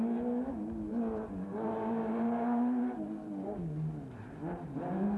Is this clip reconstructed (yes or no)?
no